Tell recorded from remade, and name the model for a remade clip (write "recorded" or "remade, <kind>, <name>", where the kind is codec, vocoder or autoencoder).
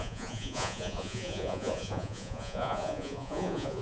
remade, vocoder, Vocos